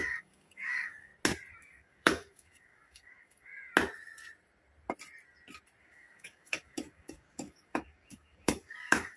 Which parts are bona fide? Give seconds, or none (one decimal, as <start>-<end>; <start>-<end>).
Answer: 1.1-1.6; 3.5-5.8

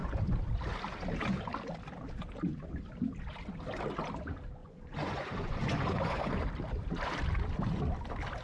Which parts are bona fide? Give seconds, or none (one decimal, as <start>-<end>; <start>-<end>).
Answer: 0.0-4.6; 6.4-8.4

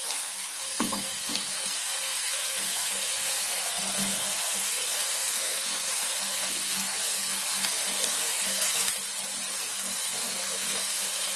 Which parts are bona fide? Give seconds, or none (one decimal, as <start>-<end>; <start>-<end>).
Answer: 8.9-9.5

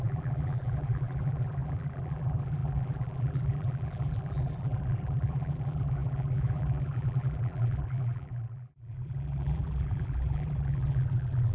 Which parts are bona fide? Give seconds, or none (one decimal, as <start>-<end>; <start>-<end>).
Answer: none

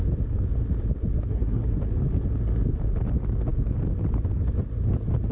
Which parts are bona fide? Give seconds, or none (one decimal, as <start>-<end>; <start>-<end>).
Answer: 0.0-1.3; 1.8-5.3

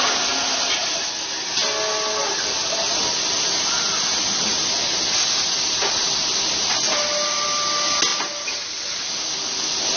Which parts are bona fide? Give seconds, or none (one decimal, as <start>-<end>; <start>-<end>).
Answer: 0.0-10.0

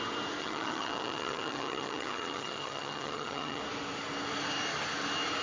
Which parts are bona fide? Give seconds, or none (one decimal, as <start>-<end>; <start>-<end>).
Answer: 0.0-0.4; 3.6-5.4